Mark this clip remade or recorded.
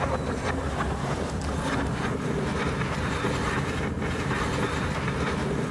recorded